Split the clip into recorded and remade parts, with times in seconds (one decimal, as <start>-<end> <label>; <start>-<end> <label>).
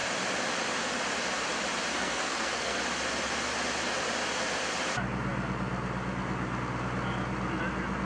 0.0-1.9 recorded; 1.9-2.8 remade; 2.8-8.1 recorded